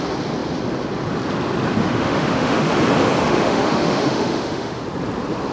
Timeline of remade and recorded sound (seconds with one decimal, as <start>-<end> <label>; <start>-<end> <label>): 0.0-1.8 recorded; 1.8-2.7 remade; 2.7-3.2 recorded; 3.2-4.8 remade; 4.8-5.5 recorded